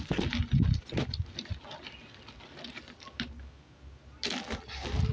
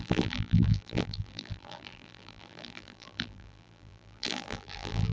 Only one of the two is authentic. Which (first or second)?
first